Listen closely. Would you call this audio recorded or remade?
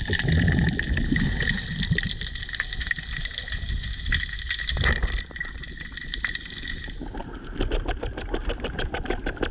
recorded